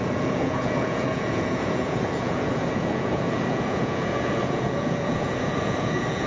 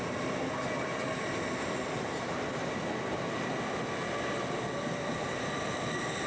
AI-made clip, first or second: first